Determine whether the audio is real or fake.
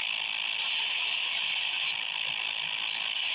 real